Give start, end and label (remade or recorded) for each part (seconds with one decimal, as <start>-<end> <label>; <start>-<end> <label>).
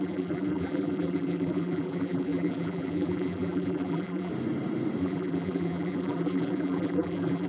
0.0-4.3 remade; 4.3-5.0 recorded; 5.0-7.5 remade